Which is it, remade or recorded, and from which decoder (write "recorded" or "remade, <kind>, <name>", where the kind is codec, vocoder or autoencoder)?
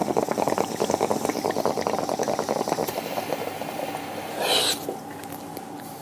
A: recorded